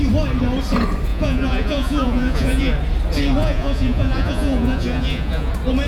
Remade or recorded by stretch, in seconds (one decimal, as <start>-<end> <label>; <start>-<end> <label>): 0.0-1.1 recorded; 1.1-2.7 remade; 2.7-3.4 recorded; 3.4-5.5 remade; 5.5-5.9 recorded